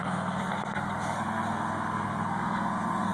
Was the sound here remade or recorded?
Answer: remade